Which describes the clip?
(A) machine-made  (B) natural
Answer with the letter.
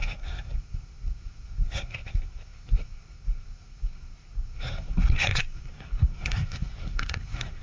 A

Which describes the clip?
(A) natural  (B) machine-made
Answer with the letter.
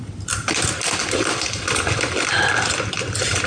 A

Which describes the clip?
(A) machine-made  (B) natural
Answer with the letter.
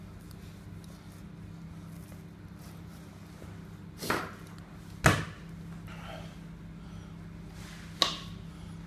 B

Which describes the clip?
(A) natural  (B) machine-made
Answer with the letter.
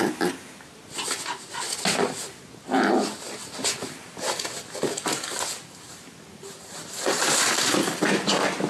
A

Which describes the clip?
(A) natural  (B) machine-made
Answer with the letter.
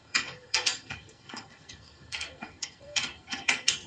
B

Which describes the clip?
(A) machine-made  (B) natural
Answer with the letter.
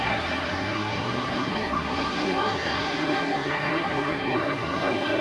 A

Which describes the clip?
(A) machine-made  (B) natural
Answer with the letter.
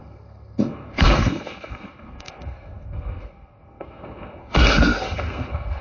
A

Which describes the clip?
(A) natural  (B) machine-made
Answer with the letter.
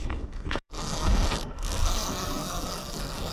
B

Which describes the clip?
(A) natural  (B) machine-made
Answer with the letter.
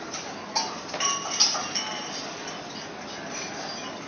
A